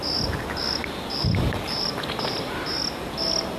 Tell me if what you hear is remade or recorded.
recorded